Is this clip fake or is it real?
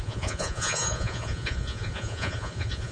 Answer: fake